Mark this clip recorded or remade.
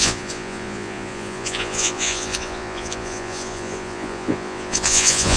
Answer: remade